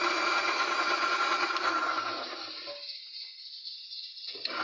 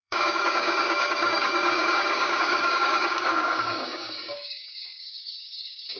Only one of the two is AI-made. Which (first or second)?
second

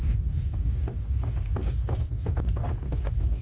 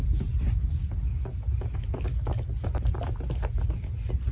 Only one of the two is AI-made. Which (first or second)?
first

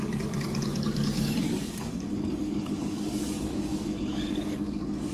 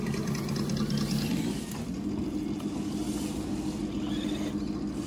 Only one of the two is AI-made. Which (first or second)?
first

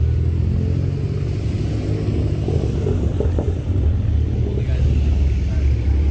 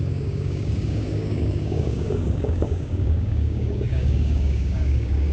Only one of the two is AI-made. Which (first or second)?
second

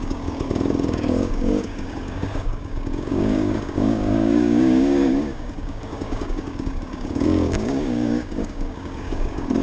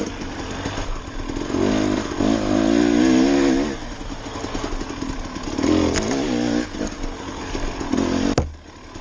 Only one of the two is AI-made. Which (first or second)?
first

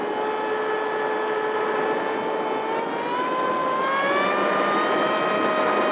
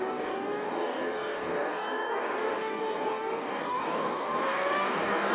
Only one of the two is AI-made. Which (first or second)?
second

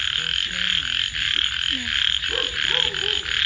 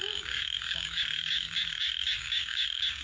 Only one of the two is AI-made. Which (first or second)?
second